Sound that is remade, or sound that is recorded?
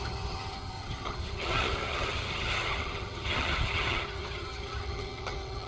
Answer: remade